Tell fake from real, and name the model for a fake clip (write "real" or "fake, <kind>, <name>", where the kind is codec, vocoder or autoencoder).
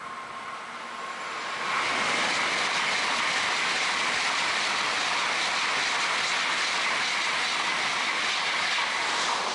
real